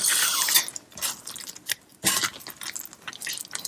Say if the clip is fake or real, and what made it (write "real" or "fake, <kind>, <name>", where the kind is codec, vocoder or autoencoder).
real